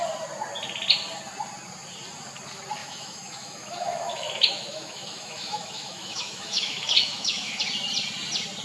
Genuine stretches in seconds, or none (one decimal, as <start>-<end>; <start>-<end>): 0.0-2.8; 7.6-8.6